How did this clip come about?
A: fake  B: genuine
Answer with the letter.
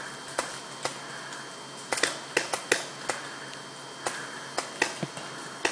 B